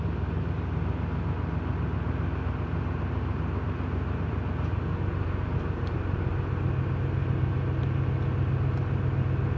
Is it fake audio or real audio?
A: real